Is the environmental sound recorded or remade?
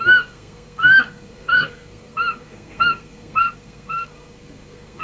remade